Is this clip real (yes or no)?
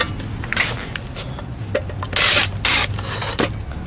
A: yes